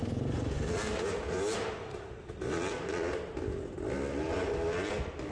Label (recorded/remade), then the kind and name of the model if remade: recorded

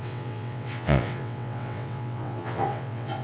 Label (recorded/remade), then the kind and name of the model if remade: remade, vocoder, WaveNeXt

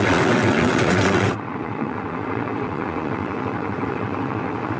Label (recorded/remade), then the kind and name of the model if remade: remade, vocoder, WaveNeXt